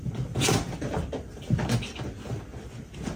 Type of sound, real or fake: real